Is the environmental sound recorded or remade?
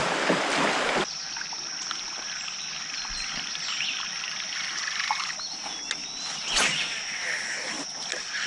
recorded